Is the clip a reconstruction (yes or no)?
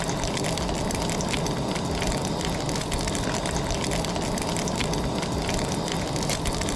no